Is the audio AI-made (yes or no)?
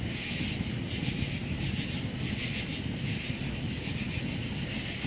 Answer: no